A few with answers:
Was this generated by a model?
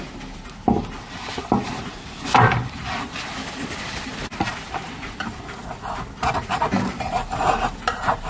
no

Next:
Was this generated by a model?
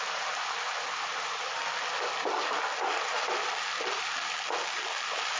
no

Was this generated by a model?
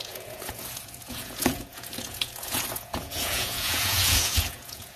yes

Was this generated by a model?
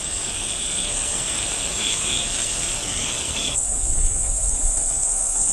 yes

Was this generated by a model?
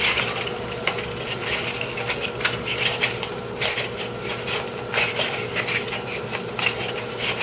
no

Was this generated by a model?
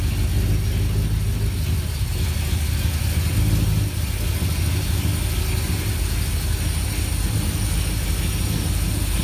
no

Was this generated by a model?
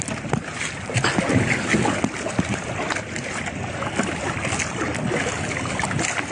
no